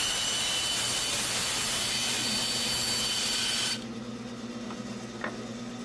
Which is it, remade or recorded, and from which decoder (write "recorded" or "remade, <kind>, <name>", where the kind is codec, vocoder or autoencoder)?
recorded